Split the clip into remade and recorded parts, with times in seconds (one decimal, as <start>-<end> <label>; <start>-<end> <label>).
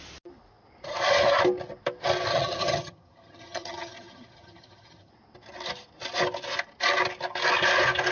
0.0-2.3 recorded; 2.3-5.1 remade; 5.1-8.1 recorded